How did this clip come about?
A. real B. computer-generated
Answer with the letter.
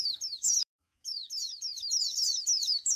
B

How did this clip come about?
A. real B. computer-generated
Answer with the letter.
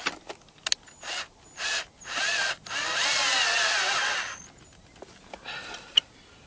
A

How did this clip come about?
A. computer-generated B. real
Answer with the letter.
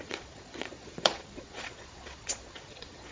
A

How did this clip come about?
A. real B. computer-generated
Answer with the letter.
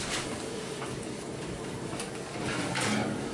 B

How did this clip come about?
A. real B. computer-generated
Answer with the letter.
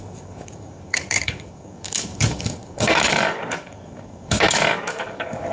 B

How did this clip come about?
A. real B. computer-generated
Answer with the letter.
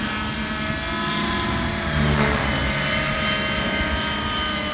A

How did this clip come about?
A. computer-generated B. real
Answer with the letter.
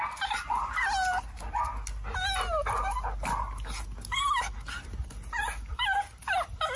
B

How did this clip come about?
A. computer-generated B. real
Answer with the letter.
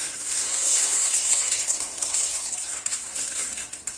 A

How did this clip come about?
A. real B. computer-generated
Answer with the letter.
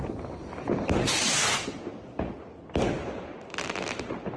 A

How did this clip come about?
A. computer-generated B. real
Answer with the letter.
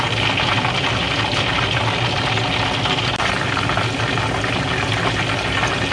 B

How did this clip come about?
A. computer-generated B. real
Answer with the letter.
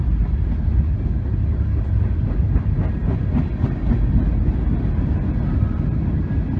B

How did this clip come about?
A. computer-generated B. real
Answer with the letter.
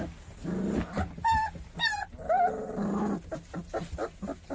B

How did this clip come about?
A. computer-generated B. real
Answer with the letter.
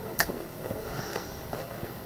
A